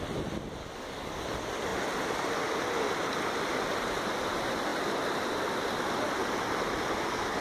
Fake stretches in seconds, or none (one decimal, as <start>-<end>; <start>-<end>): 0.6-1.2

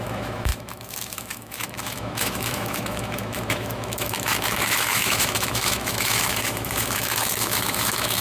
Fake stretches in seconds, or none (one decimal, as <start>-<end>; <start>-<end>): 0.0-8.2